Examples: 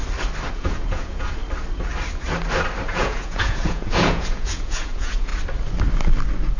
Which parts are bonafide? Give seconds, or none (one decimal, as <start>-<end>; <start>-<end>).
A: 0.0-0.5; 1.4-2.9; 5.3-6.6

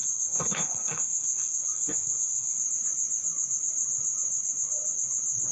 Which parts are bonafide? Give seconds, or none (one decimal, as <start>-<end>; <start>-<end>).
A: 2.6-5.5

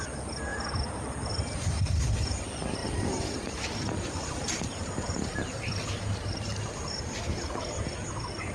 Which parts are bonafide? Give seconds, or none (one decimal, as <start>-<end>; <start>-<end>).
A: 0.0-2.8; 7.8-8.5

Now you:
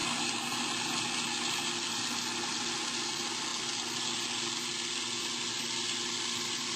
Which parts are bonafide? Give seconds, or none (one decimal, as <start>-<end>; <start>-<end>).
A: 0.0-6.8